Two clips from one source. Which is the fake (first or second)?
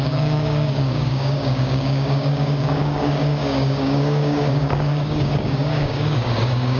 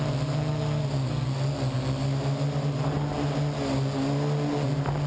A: first